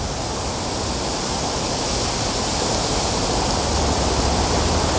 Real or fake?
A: real